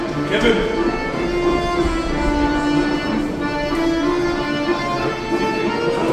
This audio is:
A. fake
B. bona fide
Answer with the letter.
A